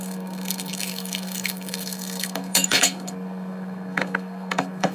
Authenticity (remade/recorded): remade